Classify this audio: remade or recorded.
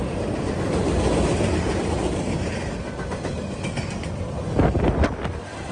recorded